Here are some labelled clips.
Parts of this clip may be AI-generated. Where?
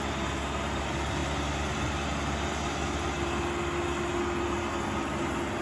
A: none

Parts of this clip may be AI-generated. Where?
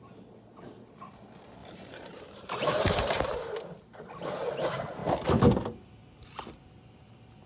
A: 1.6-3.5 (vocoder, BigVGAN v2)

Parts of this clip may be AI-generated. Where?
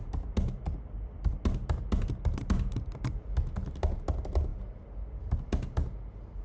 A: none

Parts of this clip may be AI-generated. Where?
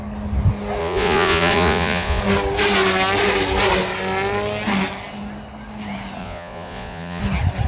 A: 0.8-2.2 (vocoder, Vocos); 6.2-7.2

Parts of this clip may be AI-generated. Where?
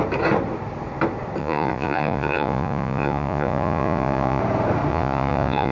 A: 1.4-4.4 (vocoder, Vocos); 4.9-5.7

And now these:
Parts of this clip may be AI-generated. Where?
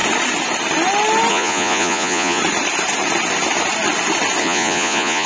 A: 1.3-2.4 (vocoder, Vocos); 4.4-5.3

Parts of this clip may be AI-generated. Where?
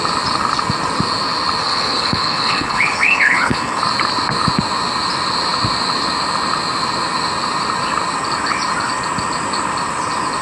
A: 1.6-3.8 (codec, HILCodec)